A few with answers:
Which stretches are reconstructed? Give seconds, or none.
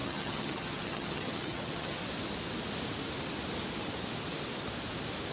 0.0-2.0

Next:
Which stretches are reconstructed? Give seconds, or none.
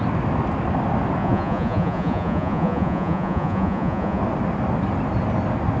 1.2-4.2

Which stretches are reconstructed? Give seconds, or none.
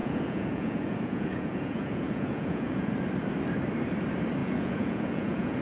0.0-2.9; 4.4-5.6